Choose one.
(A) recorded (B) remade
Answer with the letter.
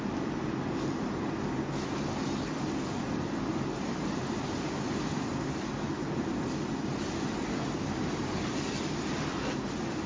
A